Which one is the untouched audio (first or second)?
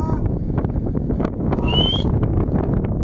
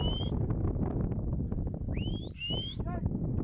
second